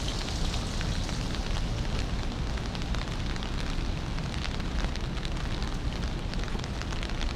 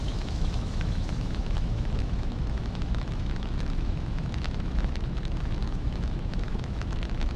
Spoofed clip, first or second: second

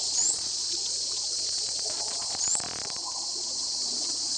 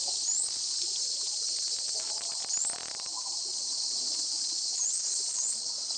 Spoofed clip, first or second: first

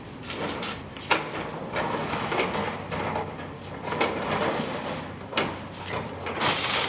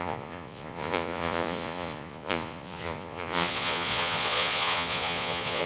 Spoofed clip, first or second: second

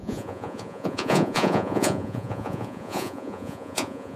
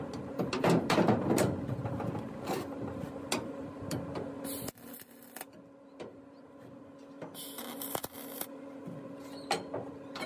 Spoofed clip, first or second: first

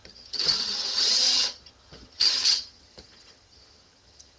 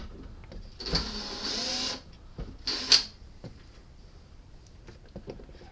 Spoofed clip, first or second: first